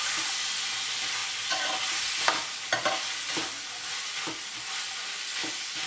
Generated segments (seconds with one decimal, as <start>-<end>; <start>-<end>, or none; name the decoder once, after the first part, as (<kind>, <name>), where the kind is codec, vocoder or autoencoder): none